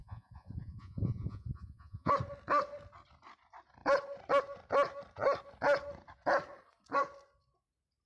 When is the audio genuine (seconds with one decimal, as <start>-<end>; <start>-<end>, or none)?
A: 2.1-8.1